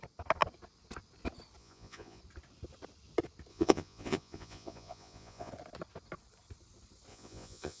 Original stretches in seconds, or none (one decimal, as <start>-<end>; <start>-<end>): 0.0-1.6; 2.2-3.5; 5.5-7.1